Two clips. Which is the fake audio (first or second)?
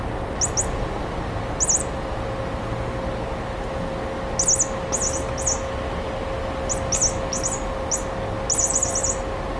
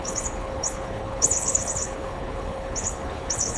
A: second